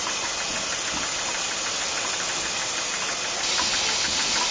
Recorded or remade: recorded